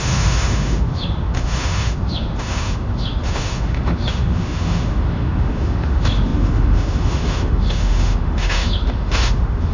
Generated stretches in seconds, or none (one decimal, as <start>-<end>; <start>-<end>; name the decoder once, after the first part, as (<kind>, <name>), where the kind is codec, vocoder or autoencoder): 0.0-9.7 (autoencoder, DAC-VAE)